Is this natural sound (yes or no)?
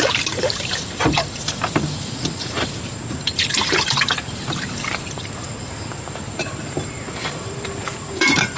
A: no